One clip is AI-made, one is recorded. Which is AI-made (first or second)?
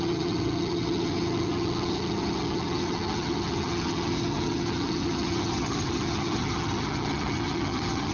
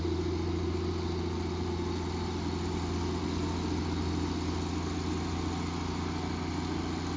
first